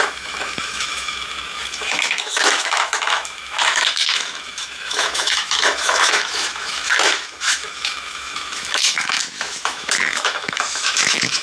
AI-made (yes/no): yes